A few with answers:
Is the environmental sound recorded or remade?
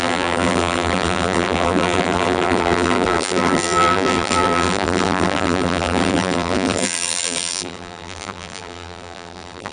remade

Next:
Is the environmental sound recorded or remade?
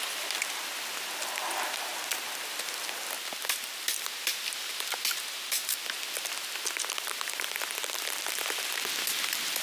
remade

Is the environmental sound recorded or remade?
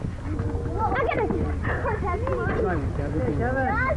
recorded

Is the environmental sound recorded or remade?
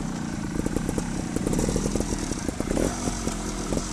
remade